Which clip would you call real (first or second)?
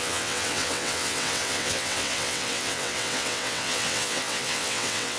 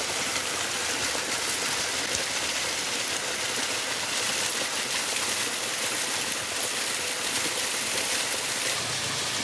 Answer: second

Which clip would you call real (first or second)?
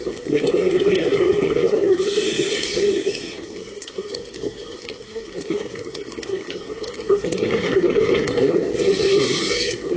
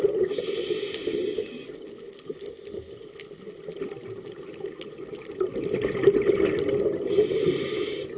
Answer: second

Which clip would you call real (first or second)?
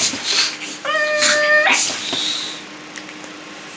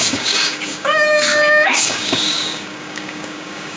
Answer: first